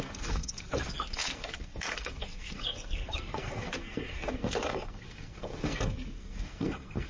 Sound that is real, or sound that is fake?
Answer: fake